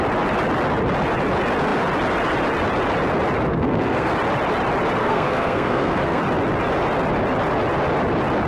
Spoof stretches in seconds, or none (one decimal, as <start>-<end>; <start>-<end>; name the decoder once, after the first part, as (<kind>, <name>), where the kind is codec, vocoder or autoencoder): 3.5-4.1 (codec, SNAC); 5.0-6.2